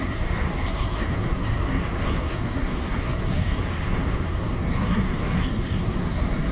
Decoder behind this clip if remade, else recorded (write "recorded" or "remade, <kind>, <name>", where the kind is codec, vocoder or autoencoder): remade, codec, SNAC